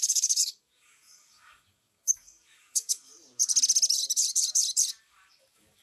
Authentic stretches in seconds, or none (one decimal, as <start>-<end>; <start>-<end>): 3.1-5.0